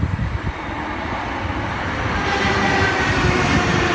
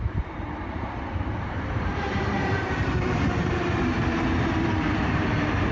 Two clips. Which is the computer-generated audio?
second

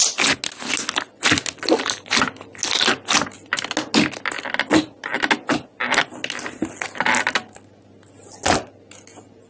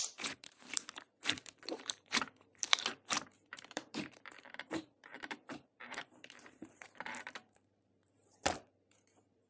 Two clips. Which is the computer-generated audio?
second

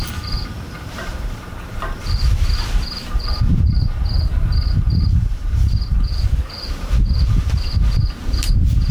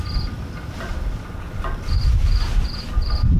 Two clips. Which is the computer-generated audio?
first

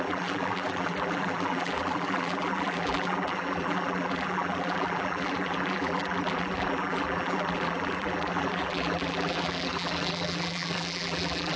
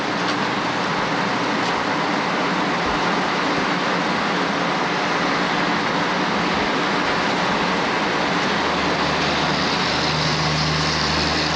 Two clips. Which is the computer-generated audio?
first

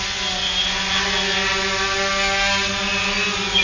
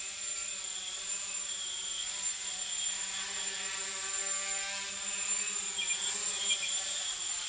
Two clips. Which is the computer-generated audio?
second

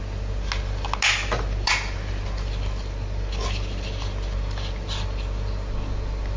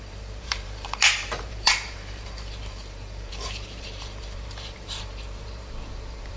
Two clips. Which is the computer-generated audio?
second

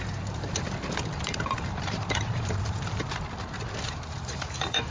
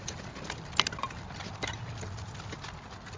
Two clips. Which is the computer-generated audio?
first